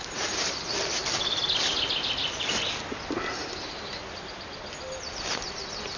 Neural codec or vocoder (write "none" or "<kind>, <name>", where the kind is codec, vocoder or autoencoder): none